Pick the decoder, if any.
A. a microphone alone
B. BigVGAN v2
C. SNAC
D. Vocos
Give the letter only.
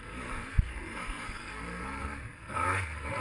C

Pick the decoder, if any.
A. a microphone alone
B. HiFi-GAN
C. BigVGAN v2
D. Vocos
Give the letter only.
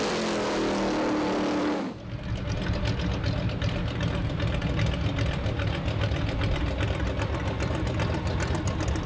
A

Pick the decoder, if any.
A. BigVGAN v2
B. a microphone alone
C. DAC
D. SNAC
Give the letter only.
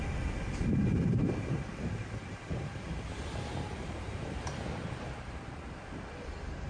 A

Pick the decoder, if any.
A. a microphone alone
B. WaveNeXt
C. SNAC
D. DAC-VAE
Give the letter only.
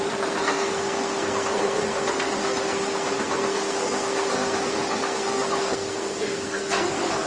C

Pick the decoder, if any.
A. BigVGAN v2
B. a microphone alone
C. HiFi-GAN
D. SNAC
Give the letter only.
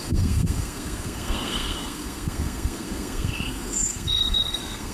D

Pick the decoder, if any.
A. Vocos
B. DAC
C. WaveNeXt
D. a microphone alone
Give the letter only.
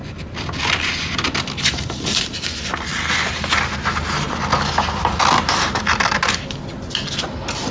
D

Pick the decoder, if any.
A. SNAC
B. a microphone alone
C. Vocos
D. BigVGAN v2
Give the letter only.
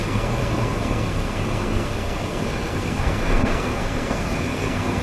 A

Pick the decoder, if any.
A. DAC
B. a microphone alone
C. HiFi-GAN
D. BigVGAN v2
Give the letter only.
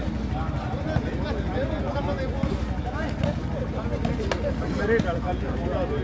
B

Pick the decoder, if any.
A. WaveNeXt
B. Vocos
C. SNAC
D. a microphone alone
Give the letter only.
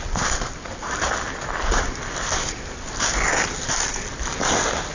D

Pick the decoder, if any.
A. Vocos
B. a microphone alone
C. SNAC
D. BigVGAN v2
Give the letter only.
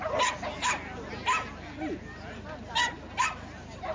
B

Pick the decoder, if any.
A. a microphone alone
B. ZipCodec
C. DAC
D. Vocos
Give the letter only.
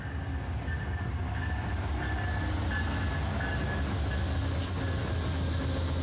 A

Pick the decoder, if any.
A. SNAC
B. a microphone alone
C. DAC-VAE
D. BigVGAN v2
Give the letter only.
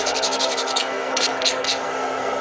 A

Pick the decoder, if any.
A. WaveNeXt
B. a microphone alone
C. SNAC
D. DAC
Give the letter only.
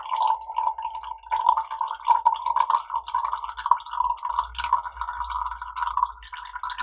B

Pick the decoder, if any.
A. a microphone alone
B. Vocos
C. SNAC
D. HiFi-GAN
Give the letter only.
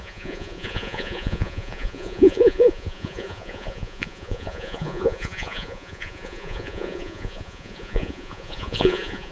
B